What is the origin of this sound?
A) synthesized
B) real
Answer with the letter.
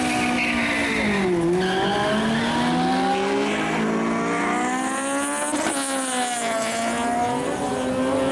B